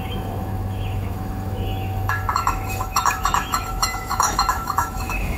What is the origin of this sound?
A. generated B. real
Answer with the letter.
A